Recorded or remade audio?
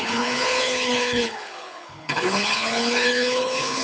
remade